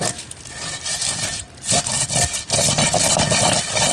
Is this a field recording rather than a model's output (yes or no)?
yes